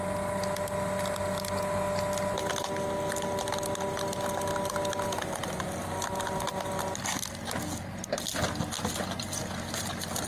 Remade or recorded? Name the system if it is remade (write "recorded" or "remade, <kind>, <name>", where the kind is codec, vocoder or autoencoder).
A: recorded